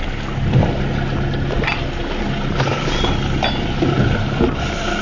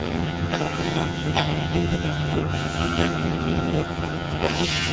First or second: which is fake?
second